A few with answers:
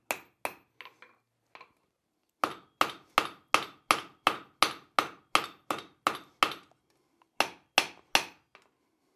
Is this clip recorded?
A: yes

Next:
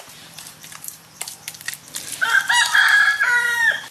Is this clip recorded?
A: no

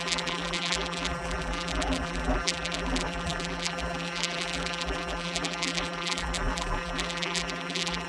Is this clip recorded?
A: no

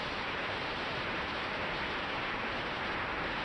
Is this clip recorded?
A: no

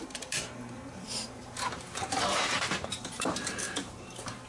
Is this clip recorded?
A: no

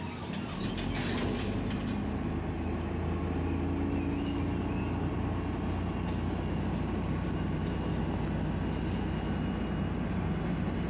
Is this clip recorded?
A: yes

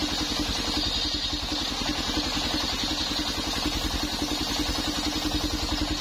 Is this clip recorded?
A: yes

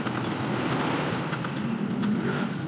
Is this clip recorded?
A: no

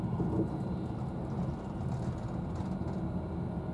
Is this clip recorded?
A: yes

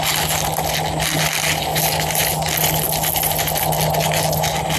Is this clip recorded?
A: yes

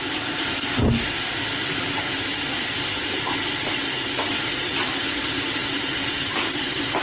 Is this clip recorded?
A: no